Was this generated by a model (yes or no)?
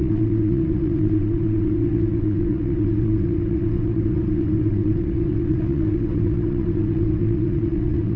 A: yes